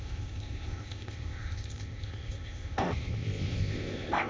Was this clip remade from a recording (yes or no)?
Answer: yes